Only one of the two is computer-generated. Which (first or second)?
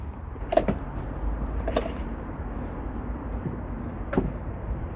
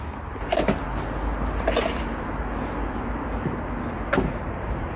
first